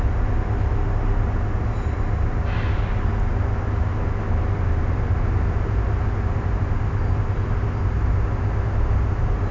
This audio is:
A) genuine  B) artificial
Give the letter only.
A